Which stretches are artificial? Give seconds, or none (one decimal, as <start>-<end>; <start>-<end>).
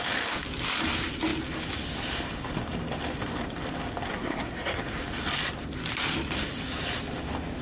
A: 4.1-4.8